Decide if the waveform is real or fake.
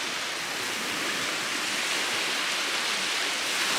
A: real